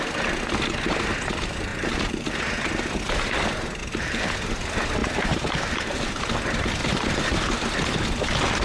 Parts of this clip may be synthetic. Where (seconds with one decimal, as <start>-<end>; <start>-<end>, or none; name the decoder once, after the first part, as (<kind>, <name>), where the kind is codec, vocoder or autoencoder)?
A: 1.7-2.3 (vocoder, BigVGAN v2); 3.8-4.3; 5.0-6.2; 6.8-7.4